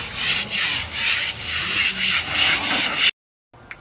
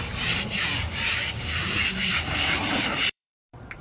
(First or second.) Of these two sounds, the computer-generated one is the second